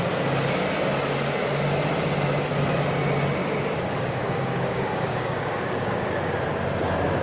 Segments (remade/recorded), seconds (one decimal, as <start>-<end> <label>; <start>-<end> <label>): 0.0-3.4 recorded; 3.4-6.4 remade; 6.4-7.2 recorded